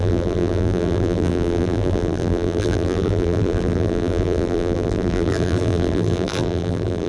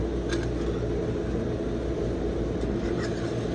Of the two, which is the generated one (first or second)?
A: first